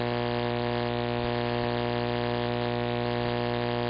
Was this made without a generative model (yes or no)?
yes